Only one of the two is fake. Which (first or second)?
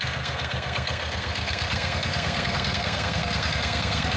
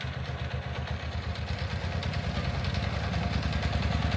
first